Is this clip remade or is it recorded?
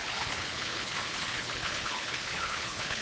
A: remade